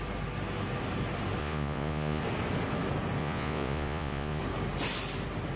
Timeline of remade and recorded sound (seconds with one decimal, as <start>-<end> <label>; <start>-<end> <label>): 0.0-1.4 recorded; 1.4-2.2 remade; 2.2-3.2 recorded; 3.2-4.4 remade; 4.4-5.6 recorded